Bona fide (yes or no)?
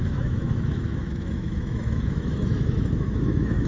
no